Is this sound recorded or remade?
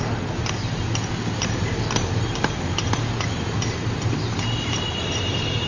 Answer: recorded